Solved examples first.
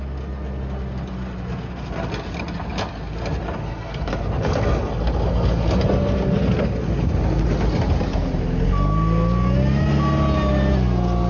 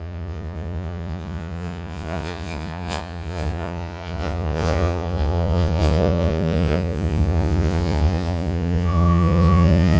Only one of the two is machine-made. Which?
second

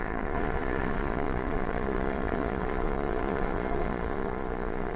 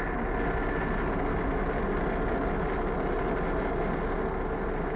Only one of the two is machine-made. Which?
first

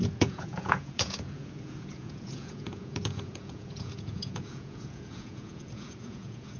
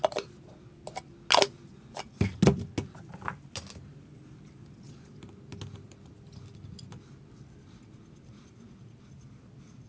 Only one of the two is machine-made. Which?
first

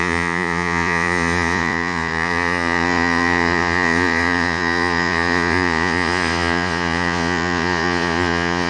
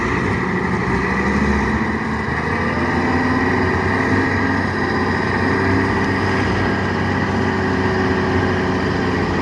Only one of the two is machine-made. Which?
first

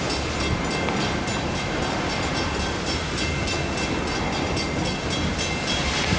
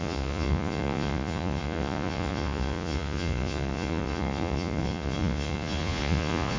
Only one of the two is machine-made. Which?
second